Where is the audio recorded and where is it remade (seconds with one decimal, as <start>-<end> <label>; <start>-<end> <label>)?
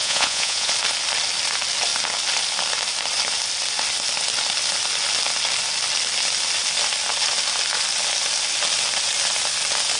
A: 0.0-0.7 remade; 0.7-10.0 recorded